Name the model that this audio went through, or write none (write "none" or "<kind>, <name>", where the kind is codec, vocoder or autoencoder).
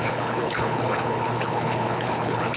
codec, HILCodec